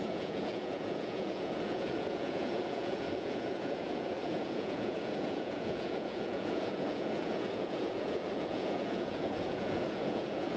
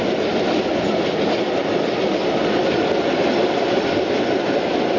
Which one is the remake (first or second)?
first